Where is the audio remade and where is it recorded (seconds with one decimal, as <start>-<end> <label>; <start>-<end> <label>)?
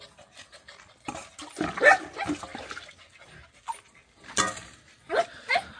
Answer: 0.0-5.8 recorded